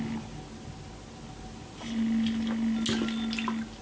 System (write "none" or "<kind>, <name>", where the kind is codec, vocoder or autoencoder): none